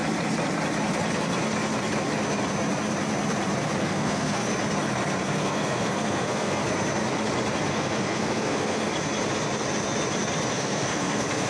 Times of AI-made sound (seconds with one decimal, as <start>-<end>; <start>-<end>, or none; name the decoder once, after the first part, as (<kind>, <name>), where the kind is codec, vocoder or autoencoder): 3.8-4.5 (codec, SNAC); 5.2-6.6; 7.7-8.9; 10.5-11.5

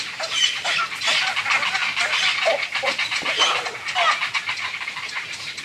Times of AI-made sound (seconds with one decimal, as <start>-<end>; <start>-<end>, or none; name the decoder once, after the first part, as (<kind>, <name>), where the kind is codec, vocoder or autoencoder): none

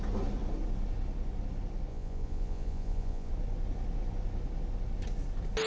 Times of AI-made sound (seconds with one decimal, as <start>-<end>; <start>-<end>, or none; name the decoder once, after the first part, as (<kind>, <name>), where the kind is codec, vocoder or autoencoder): 1.9-3.3 (vocoder, Vocos)

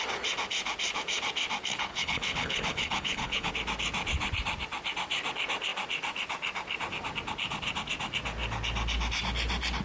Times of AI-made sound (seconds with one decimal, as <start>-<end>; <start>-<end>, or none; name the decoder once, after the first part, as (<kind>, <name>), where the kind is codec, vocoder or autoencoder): 1.9-3.5 (codec, HILCodec)